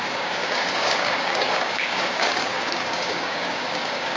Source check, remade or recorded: remade